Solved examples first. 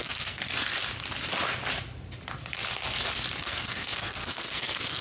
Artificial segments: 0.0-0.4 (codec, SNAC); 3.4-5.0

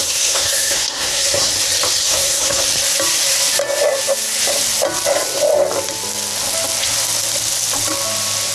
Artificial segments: 0.0-1.5 (codec, SNAC); 2.0-2.6